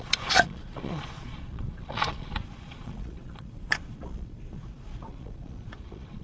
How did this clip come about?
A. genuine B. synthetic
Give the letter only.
B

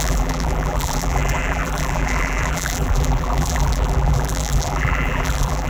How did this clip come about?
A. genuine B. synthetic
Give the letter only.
B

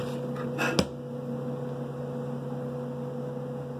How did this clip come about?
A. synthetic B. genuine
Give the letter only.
B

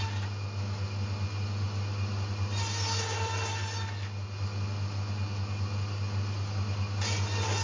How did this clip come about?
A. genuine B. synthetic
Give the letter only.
A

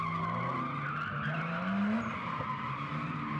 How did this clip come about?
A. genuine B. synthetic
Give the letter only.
A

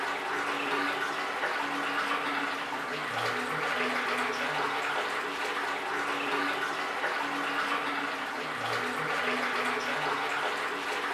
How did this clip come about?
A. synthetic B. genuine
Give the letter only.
B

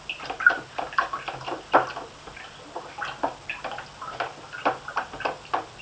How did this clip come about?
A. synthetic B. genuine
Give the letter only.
B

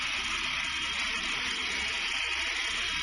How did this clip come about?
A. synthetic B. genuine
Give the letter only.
B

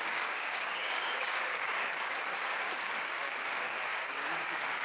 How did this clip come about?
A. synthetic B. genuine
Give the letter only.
A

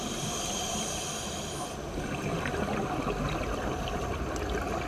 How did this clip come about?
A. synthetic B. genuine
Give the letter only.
B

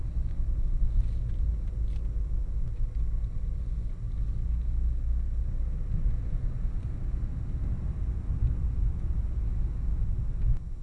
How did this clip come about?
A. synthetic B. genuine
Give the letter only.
B